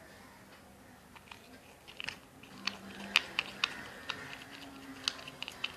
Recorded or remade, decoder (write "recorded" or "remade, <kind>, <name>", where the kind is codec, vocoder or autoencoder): recorded